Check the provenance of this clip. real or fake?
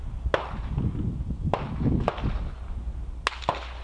real